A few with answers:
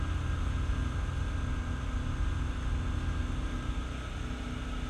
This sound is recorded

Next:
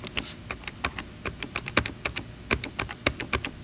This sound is recorded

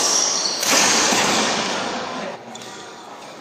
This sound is remade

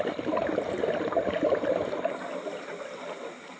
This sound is recorded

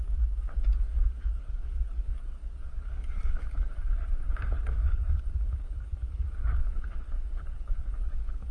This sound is remade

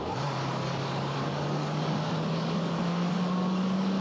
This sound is remade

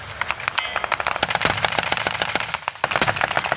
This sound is recorded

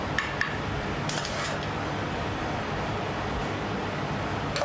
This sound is recorded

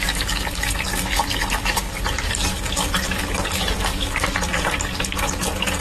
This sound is remade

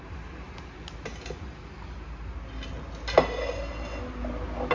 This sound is recorded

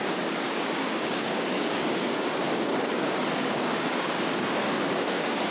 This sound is remade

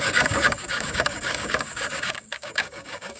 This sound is remade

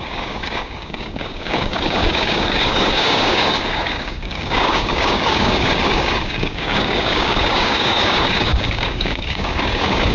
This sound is remade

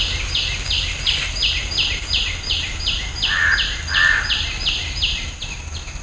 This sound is recorded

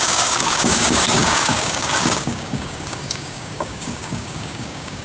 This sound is remade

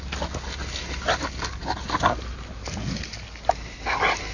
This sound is recorded